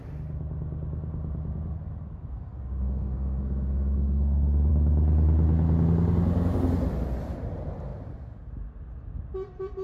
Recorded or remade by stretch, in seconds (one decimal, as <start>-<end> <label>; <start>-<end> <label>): 0.0-2.3 recorded; 2.3-4.7 remade; 4.7-9.8 recorded